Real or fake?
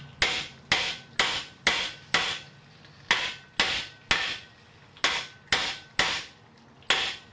real